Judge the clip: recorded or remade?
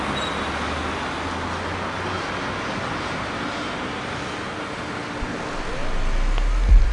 recorded